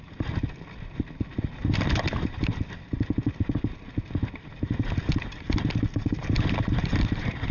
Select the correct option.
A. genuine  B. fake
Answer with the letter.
A